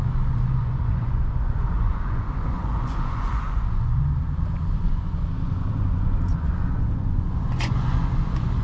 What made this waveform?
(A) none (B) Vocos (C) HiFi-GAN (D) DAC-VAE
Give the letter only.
B